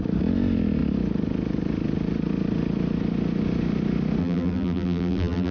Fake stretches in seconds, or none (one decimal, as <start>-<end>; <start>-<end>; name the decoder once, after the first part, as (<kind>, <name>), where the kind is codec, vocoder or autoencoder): 4.2-5.5 (vocoder, BigVGAN v2)